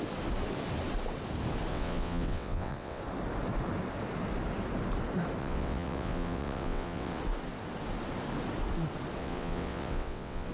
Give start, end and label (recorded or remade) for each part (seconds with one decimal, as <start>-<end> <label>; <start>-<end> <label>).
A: 0.0-1.7 recorded; 1.7-3.0 remade; 3.0-5.4 recorded; 5.4-7.2 remade; 7.2-9.2 recorded; 9.2-10.5 remade